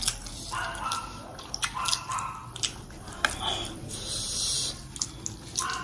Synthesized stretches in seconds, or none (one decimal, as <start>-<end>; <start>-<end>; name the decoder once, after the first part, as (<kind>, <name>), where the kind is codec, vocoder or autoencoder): none